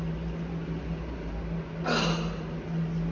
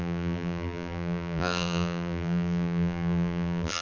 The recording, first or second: first